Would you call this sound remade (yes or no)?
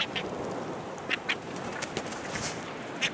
no